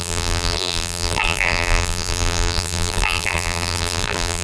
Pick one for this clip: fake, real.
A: fake